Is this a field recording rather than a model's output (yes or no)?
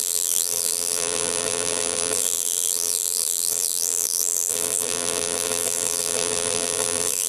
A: no